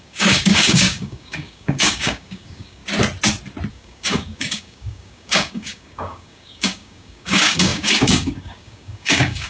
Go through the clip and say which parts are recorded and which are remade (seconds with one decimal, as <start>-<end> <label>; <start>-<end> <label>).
0.0-2.8 remade; 2.8-3.7 recorded; 3.7-9.5 remade